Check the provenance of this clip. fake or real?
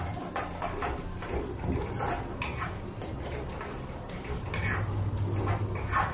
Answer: real